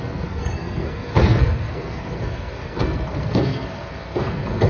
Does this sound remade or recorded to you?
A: remade